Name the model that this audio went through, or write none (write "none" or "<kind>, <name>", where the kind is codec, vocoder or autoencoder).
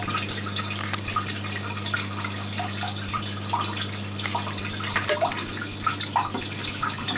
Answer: vocoder, BigVGAN v2